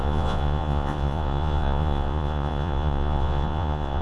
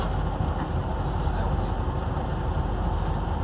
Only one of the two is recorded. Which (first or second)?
second